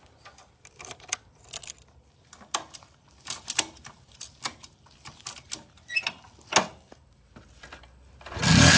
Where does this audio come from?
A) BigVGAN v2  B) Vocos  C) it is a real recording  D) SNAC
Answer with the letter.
C